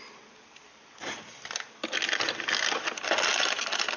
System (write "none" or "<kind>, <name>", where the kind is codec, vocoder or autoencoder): none